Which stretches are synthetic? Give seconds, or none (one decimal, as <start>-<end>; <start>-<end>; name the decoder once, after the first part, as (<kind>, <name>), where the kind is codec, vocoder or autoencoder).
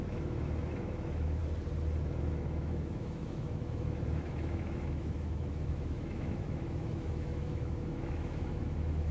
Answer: 0.0-1.4 (autoencoder, DAC-VAE); 2.2-9.1